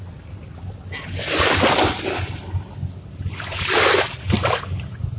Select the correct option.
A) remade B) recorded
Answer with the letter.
B